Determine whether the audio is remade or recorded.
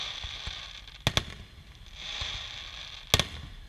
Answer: recorded